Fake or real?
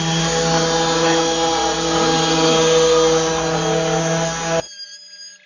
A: real